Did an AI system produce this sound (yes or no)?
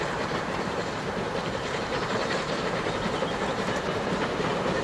yes